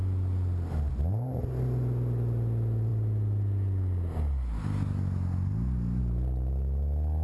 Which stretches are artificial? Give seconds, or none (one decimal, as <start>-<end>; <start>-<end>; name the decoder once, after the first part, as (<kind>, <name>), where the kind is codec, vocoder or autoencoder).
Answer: none